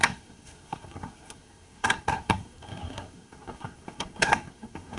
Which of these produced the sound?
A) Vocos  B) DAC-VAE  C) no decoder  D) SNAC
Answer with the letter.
D